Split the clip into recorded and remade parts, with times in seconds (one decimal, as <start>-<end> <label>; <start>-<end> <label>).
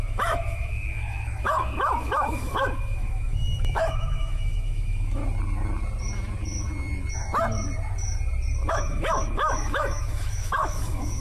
0.0-5.2 remade; 5.2-8.7 recorded; 8.7-11.2 remade